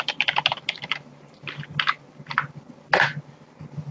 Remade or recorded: recorded